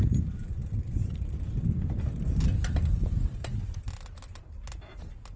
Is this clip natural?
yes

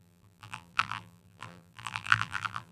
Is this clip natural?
no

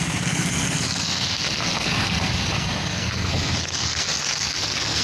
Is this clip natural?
no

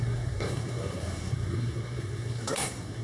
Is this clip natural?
no